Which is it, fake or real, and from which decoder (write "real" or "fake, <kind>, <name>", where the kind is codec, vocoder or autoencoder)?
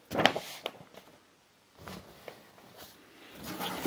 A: real